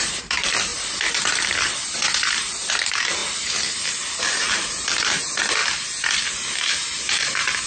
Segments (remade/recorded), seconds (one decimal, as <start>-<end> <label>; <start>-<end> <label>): 0.0-0.7 remade; 0.7-2.7 recorded; 2.7-3.2 remade; 3.2-4.2 recorded; 4.2-5.6 remade; 5.6-6.3 recorded; 6.3-7.7 remade